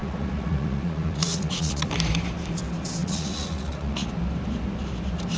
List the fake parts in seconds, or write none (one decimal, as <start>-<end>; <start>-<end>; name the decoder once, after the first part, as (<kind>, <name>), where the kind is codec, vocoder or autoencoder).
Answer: 0.0-1.9 (vocoder, Vocos); 3.0-4.1